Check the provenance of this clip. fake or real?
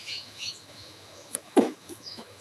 fake